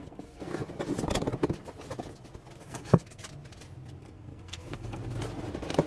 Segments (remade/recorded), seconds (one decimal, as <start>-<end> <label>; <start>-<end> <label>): 0.0-0.5 remade; 0.5-2.6 recorded; 2.6-3.2 remade; 3.2-4.0 recorded; 4.0-5.0 remade; 5.0-5.9 recorded